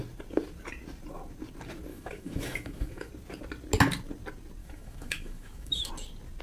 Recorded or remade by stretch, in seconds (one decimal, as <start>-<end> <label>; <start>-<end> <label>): 0.0-1.9 recorded; 1.9-3.1 remade; 3.1-4.6 recorded; 4.6-5.9 remade; 5.9-6.4 recorded